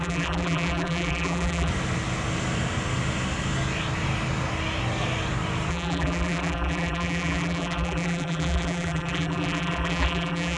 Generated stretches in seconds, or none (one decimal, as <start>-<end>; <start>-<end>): 0.0-1.7; 5.7-10.6